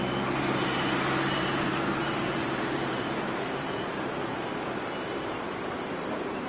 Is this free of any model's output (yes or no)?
no